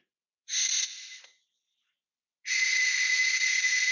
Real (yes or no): yes